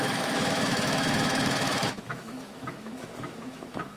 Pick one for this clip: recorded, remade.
remade